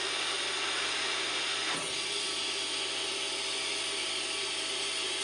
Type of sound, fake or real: real